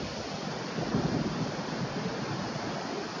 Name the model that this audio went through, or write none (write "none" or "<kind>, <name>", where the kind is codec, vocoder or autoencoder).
none